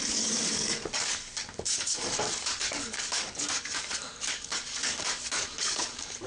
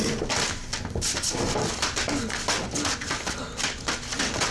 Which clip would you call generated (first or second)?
first